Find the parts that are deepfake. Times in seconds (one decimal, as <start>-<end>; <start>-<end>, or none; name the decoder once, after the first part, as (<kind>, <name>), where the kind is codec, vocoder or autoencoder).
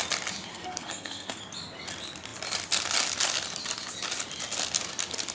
0.5-1.4 (codec, SNAC)